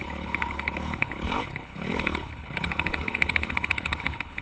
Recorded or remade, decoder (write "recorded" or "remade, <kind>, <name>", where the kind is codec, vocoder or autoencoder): remade, codec, HILCodec